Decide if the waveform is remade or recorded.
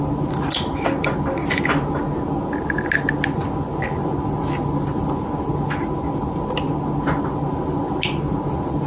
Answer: recorded